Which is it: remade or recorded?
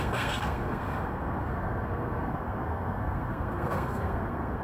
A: remade